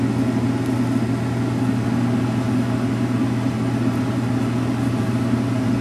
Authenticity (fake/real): real